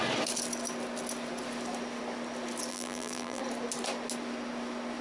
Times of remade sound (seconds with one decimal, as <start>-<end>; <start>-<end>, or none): 2.7-3.4